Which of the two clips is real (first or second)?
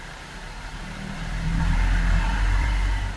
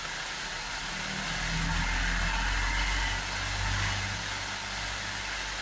second